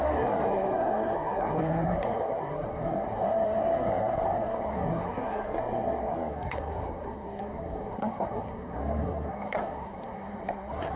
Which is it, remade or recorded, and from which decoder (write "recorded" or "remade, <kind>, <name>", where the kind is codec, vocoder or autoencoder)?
remade, codec, SNAC